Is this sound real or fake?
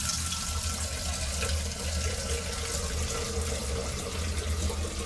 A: real